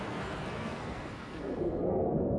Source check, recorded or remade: remade